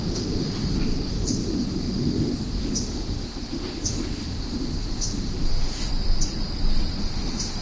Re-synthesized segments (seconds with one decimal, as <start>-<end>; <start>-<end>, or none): 0.0-5.9; 7.0-7.6